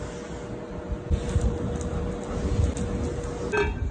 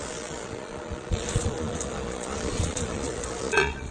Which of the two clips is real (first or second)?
first